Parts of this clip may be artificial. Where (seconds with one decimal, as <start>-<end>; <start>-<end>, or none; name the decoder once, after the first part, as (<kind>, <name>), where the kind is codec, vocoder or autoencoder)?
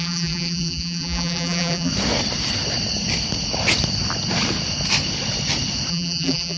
0.0-1.9 (vocoder, BigVGAN v2); 5.9-6.6